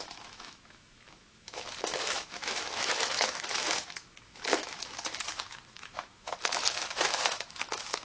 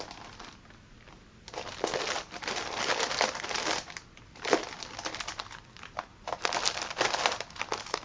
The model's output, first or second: first